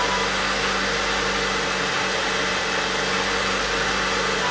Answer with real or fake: real